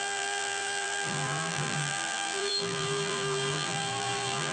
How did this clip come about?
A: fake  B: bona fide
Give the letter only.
A